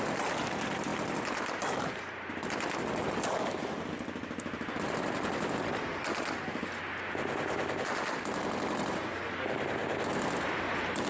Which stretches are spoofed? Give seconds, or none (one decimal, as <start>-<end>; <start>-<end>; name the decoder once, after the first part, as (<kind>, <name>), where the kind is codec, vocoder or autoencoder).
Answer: none